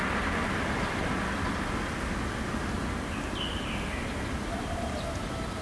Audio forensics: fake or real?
real